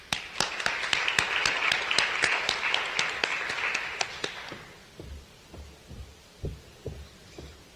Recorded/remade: remade